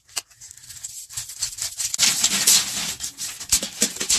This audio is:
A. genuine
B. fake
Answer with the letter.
A